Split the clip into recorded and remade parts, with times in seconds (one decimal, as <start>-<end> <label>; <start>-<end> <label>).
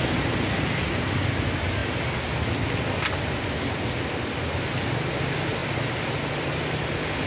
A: 0.0-7.3 recorded